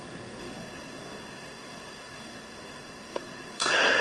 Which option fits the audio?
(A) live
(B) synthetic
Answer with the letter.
B